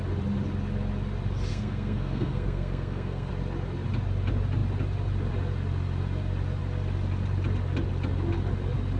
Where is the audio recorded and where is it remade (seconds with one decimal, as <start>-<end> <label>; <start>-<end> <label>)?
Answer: 0.0-1.5 recorded; 1.5-3.3 remade; 3.3-9.0 recorded

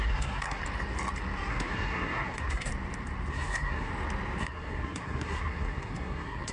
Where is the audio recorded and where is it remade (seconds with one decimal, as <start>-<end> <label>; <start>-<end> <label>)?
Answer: 0.0-0.6 remade; 0.6-1.5 recorded; 1.5-2.7 remade; 2.7-3.3 recorded; 3.3-3.9 remade; 3.9-4.4 recorded; 4.4-6.5 remade

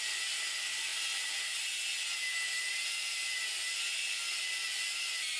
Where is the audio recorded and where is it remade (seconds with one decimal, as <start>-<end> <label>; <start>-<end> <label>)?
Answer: 0.0-5.4 remade

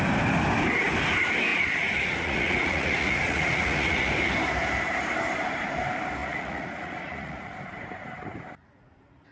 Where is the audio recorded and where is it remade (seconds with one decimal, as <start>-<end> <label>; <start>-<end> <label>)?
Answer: 0.0-1.5 recorded; 1.5-4.1 remade; 4.1-6.2 recorded; 6.2-7.6 remade; 7.6-9.3 recorded